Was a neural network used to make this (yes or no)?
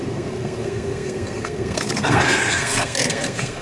yes